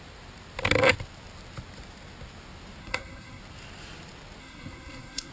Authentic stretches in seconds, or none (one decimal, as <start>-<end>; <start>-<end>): 0.0-2.8; 3.4-4.4